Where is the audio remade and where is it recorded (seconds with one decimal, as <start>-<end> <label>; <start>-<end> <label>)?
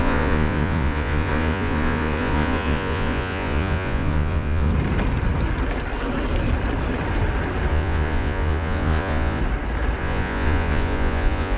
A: 0.0-4.7 remade; 4.7-7.7 recorded; 7.7-9.4 remade; 9.4-10.0 recorded; 10.0-11.6 remade